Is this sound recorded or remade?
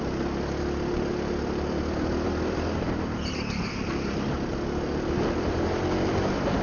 recorded